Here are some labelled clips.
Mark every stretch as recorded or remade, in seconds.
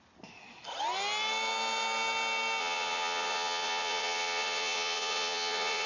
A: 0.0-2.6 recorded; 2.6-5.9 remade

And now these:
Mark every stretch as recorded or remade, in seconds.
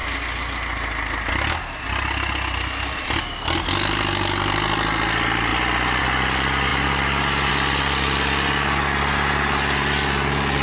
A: 0.0-10.6 recorded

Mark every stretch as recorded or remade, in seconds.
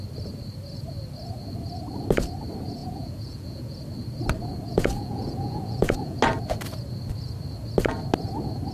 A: 0.0-2.8 recorded; 2.8-3.8 remade; 3.8-4.7 recorded; 4.7-6.2 remade; 6.2-8.7 recorded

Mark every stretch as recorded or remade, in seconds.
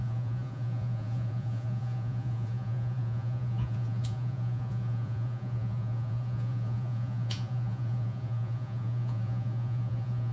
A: 0.0-10.3 remade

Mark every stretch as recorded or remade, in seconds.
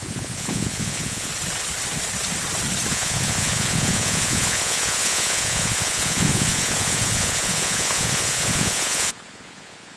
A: 0.0-1.3 remade; 1.3-2.9 recorded; 2.9-10.0 remade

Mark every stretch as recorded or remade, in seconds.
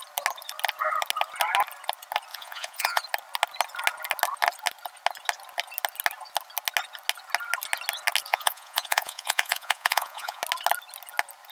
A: 0.0-2.3 recorded; 2.3-3.0 remade; 3.0-8.3 recorded; 8.3-10.4 remade; 10.4-11.5 recorded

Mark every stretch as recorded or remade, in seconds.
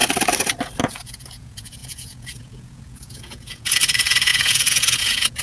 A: 0.0-0.8 recorded; 0.8-5.4 remade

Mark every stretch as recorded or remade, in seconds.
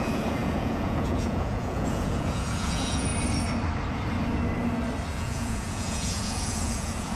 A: 0.0-3.1 remade; 3.1-5.1 recorded; 5.1-7.2 remade